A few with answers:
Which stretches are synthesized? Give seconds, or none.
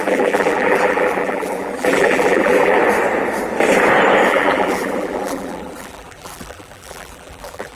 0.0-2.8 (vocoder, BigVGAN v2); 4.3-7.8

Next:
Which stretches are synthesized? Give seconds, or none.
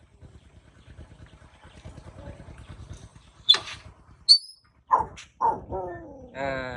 3.1-4.2 (vocoder, BigVGAN v2)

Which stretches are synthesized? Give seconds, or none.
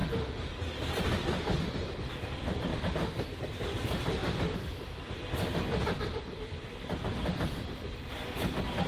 0.8-2.7 (vocoder, BigVGAN v2); 3.5-8.9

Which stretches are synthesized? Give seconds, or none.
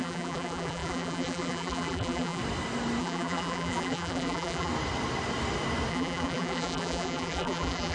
0.0-2.4 (vocoder, BigVGAN v2); 3.0-4.7; 5.9-7.9